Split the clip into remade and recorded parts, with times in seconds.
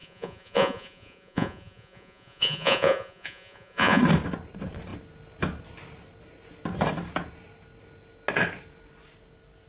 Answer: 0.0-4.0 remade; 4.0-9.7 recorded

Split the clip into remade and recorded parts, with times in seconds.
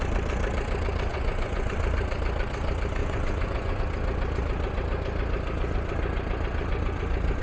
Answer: 0.0-1.1 recorded; 1.1-1.7 remade; 1.7-3.0 recorded; 3.0-3.8 remade; 3.8-7.4 recorded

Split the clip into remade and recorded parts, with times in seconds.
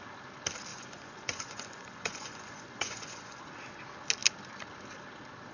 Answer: 0.0-0.7 recorded; 0.7-3.4 remade; 3.4-5.5 recorded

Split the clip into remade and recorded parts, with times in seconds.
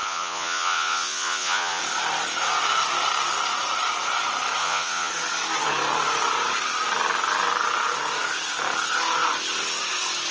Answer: 0.0-1.8 remade; 1.8-4.6 recorded; 4.6-5.1 remade; 5.1-10.3 recorded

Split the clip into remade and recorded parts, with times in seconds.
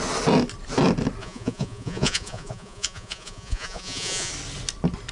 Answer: 0.0-1.2 recorded; 1.2-4.3 remade; 4.3-5.1 recorded